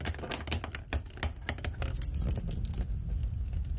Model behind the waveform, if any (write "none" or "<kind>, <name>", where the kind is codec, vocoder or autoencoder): none